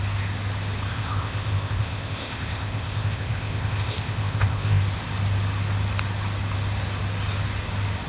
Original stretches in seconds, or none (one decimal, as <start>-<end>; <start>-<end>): 0.0-0.9; 4.8-8.1